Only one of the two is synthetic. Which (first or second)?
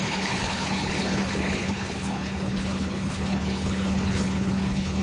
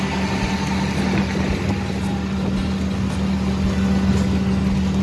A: first